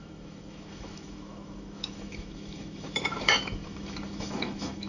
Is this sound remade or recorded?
remade